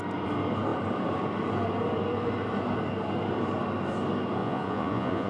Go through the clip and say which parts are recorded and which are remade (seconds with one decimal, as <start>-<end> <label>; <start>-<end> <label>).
0.0-4.4 recorded; 4.4-5.3 remade